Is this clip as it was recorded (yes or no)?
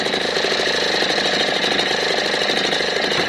yes